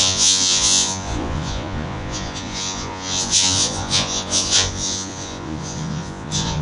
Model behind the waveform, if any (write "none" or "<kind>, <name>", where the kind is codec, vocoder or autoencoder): vocoder, Vocos